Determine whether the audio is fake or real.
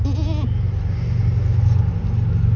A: real